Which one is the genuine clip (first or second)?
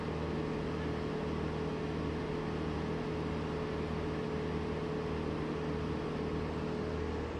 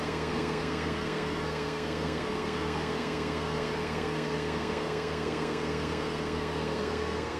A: first